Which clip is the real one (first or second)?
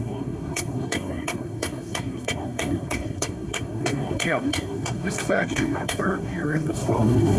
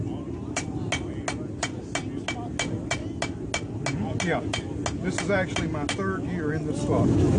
second